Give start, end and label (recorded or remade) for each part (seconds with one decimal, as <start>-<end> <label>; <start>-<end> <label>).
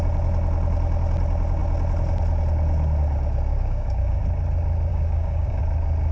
0.0-3.5 recorded; 3.5-4.2 remade; 4.2-4.9 recorded; 4.9-5.6 remade; 5.6-6.1 recorded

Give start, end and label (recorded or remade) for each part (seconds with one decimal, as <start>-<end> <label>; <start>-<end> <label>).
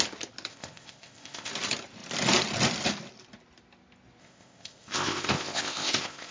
0.0-0.5 recorded; 0.5-1.5 remade; 1.5-4.2 recorded; 4.2-6.3 remade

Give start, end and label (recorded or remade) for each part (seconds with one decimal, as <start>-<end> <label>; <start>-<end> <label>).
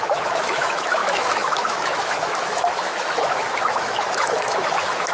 0.0-5.1 remade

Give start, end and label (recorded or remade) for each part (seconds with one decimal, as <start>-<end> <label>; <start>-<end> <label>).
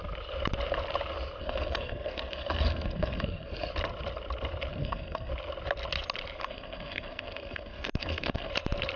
0.0-1.4 recorded; 1.4-3.7 remade; 3.7-4.7 recorded; 4.7-5.3 remade; 5.3-6.4 recorded; 6.4-8.5 remade; 8.5-9.0 recorded